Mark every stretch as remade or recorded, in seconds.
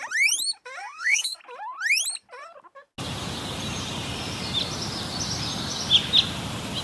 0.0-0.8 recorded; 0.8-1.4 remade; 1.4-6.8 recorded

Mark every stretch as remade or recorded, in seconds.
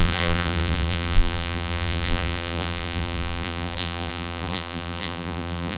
0.0-5.8 remade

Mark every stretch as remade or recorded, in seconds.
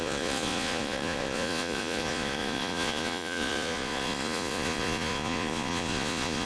0.0-6.5 remade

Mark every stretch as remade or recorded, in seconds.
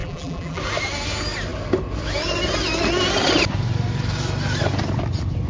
0.0-0.6 remade; 0.6-5.5 recorded